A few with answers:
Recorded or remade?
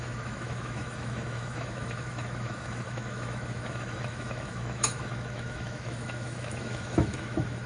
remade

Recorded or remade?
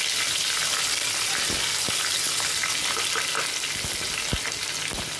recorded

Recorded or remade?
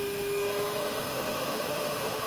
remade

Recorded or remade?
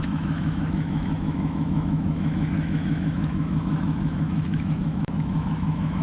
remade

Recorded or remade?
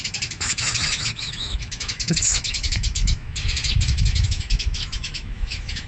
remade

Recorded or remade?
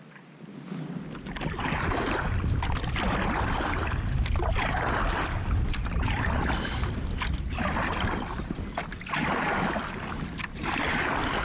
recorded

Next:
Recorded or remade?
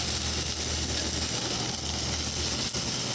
recorded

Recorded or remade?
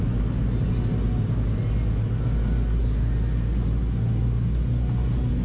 recorded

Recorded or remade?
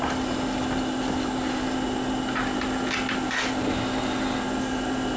recorded